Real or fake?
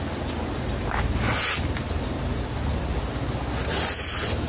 real